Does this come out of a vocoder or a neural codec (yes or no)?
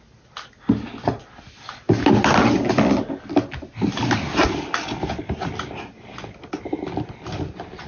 no